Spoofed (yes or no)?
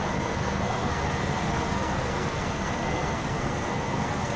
yes